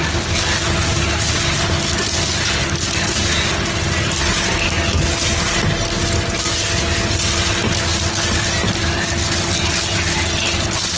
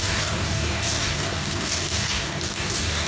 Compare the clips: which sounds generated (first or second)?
second